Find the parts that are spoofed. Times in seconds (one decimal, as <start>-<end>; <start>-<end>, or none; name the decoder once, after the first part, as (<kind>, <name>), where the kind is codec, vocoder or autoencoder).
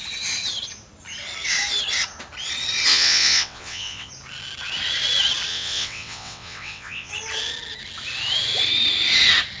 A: 2.9-4.1 (vocoder, WaveNeXt); 5.5-7.1